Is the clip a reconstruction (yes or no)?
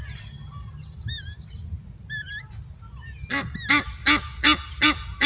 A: no